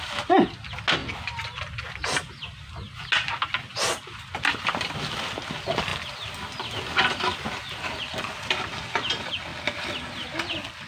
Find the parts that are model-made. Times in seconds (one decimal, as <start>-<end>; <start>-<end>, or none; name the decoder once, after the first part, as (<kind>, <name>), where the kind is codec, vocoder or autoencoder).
none